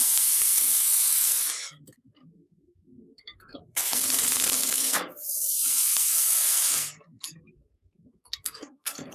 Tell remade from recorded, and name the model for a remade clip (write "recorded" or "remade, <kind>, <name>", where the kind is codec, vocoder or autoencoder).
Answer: remade, codec, SNAC